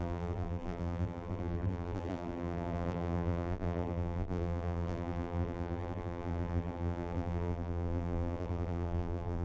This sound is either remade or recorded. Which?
remade